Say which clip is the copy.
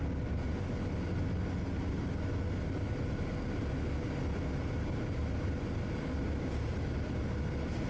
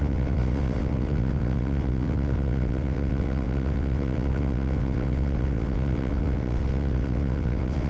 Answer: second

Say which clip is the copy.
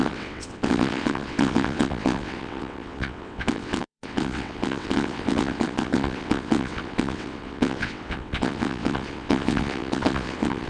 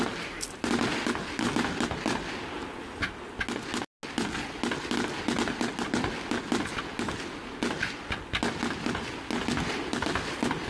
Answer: first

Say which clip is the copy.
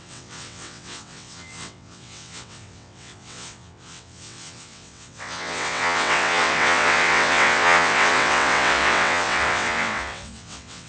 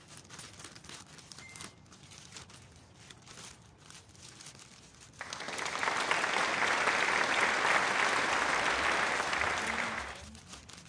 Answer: first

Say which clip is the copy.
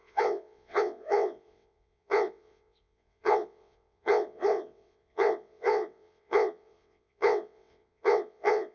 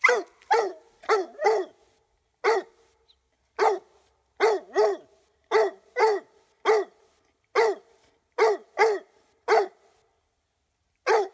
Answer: first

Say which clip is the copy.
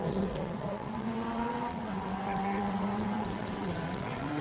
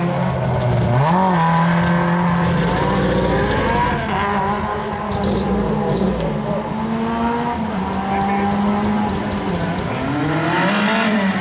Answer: first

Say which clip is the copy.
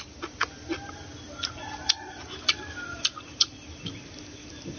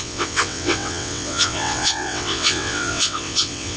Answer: second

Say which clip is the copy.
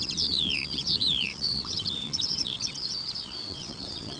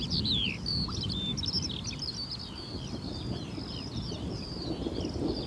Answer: first